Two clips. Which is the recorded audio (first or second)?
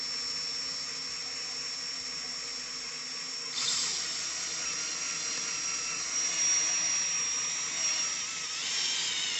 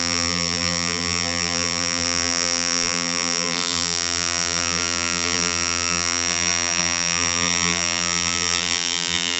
first